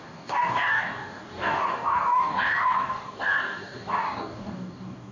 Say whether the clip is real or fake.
fake